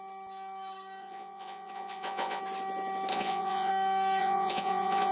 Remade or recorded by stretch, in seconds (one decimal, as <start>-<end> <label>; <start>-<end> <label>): 0.0-1.0 recorded; 1.0-2.4 remade; 2.4-3.1 recorded; 3.1-3.7 remade; 3.7-4.2 recorded; 4.2-5.1 remade